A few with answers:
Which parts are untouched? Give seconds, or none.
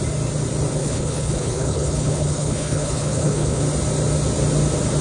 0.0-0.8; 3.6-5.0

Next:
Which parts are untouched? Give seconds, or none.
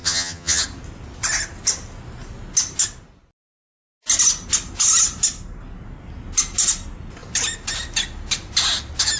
0.6-9.2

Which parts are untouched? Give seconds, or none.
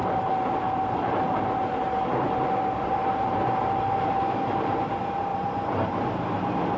4.1-5.3; 5.9-6.8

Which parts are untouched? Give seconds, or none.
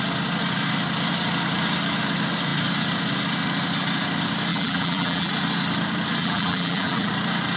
0.0-4.5; 5.3-6.2; 7.1-7.6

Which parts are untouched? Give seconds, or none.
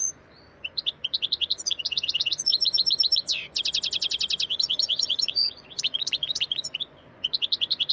none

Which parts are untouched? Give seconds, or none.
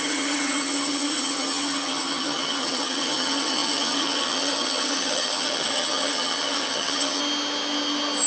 7.2-8.3